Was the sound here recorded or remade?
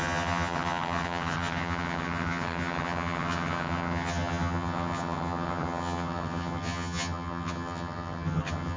remade